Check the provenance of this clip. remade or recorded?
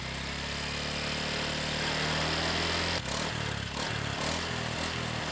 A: recorded